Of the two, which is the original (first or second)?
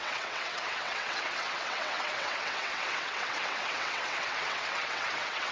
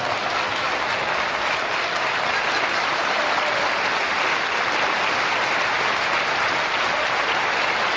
second